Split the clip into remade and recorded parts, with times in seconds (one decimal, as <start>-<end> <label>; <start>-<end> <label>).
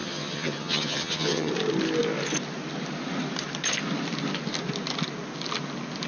0.0-1.5 remade; 1.5-6.1 recorded